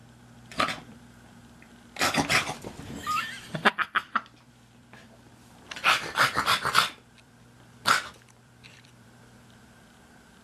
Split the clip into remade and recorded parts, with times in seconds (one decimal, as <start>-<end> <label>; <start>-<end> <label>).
0.0-0.7 recorded; 0.7-10.4 remade